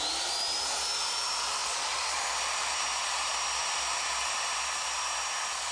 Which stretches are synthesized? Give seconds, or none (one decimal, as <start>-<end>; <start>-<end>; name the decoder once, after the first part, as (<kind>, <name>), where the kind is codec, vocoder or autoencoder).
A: 1.6-2.2 (vocoder, Vocos)